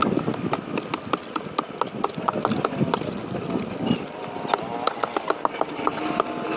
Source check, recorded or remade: recorded